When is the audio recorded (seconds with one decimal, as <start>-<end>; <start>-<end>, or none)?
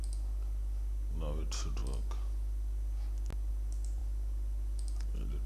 0.0-5.5